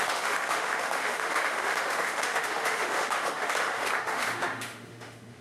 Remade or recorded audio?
remade